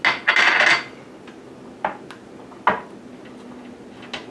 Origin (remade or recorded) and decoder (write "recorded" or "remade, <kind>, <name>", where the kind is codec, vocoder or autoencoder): recorded